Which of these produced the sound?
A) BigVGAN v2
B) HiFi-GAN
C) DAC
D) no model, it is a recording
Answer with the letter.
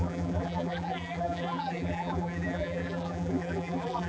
A